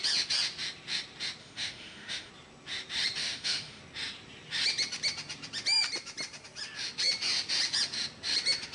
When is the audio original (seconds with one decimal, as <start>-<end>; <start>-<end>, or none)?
0.0-1.4; 2.3-3.2; 3.8-8.7